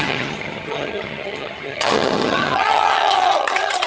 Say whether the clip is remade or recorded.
remade